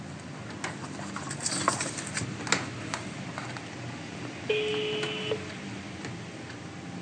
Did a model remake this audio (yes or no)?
no